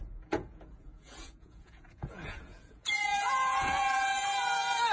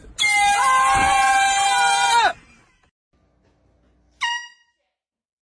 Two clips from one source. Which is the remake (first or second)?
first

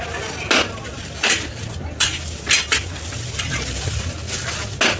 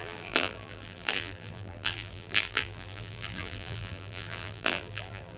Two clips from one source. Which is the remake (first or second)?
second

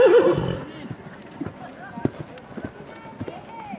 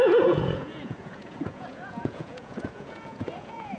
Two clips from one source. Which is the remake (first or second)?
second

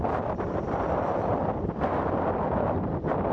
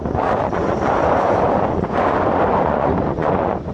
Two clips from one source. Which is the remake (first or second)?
second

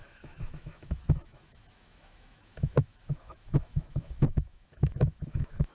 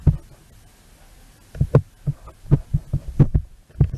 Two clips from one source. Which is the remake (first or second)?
first